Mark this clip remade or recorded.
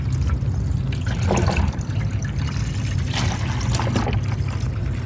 recorded